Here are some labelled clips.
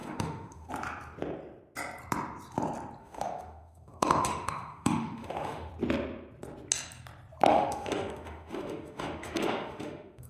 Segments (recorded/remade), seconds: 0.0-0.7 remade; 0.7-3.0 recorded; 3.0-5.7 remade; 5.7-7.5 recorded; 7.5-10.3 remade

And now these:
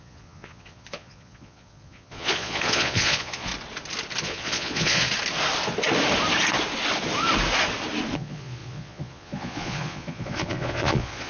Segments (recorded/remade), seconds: 0.0-3.5 remade; 3.5-4.2 recorded; 4.2-5.0 remade; 5.0-8.1 recorded; 8.1-11.3 remade

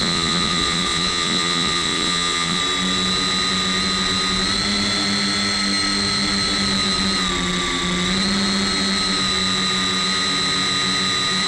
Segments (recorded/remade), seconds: 0.0-2.6 remade; 2.6-11.5 recorded

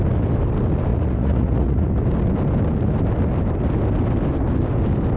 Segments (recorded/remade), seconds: 0.0-0.9 recorded; 0.9-1.9 remade; 1.9-5.2 recorded